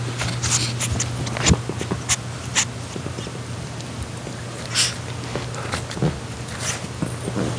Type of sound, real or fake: real